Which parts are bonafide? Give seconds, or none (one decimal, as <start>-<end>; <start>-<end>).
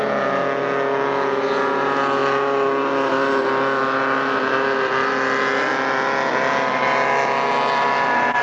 0.0-8.4